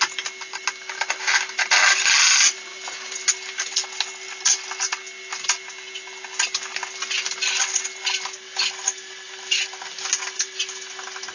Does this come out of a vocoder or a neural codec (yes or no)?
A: no